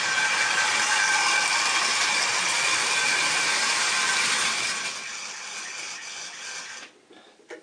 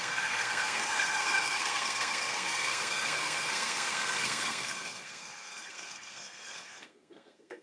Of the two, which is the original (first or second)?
first